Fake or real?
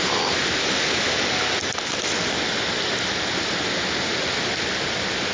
real